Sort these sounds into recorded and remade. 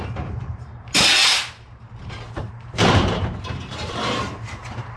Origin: remade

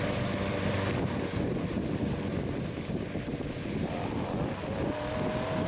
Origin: recorded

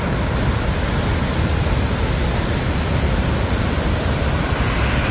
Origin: recorded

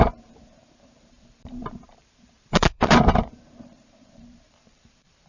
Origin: remade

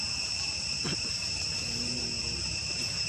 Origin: remade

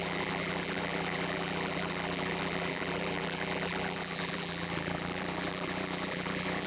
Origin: remade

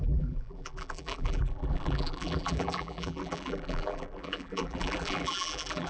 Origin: remade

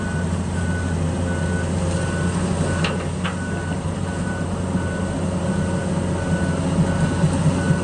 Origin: recorded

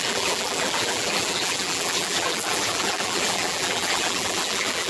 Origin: remade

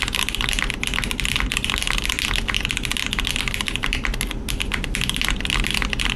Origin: recorded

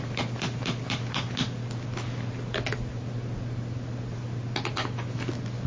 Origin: recorded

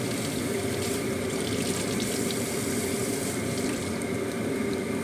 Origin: remade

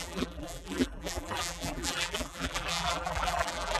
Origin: remade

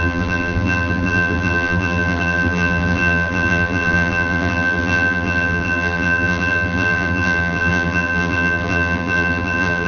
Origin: remade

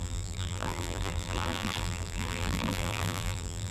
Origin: remade